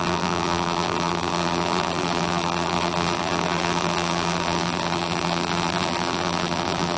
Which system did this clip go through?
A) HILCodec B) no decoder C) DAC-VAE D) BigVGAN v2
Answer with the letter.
D